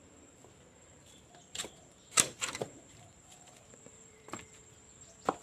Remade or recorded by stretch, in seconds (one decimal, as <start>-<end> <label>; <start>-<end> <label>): 0.0-4.6 remade; 4.6-5.4 recorded

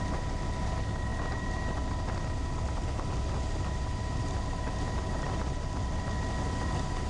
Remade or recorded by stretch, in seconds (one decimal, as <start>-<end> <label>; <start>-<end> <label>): 0.0-7.1 recorded

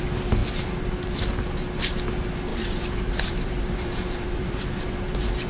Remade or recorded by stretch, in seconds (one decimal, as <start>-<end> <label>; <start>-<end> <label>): 0.0-2.5 recorded; 2.5-4.6 remade; 4.6-5.5 recorded

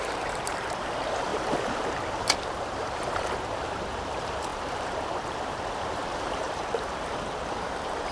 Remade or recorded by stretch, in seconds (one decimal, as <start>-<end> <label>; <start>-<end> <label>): 0.0-8.1 remade

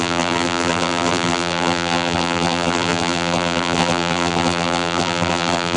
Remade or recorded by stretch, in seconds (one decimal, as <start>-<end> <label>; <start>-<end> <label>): 0.0-5.8 remade

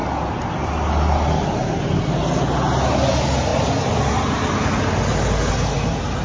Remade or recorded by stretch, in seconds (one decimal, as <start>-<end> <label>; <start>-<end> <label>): 0.0-6.2 recorded

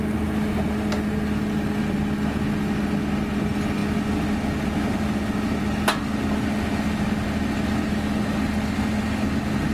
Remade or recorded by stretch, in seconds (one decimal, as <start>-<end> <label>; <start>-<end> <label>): 0.0-9.7 recorded